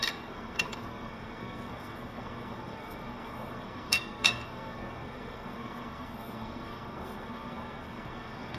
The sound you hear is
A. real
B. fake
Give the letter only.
B